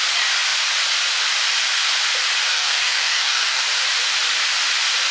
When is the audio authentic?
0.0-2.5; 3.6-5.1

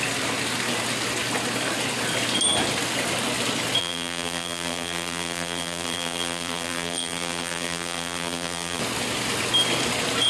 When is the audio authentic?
0.0-3.8; 8.8-10.3

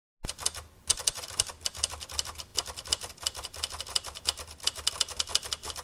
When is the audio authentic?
0.0-0.9; 1.5-5.8

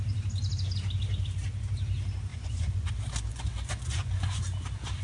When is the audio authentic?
0.0-2.3; 2.9-3.3; 4.4-5.0

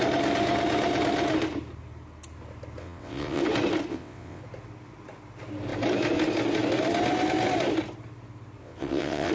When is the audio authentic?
0.0-2.8; 3.4-3.9; 4.4-8.6

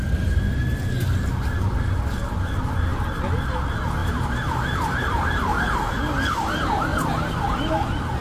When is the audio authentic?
0.0-4.0; 5.9-6.9; 7.7-8.2

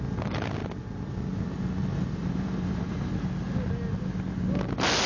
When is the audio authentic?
0.0-1.9; 3.1-5.1

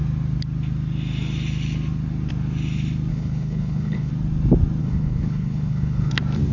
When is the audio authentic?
0.0-3.1; 4.1-4.8; 6.1-6.5